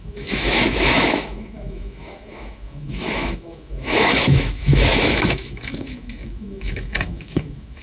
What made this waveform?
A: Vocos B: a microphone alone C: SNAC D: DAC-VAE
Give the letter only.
D